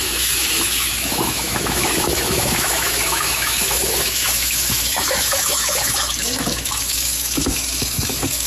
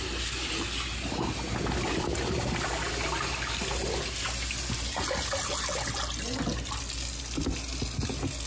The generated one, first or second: first